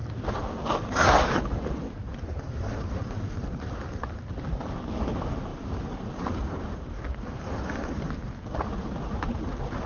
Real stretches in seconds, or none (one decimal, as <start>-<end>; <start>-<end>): 0.0-2.0; 2.9-5.5; 7.4-9.9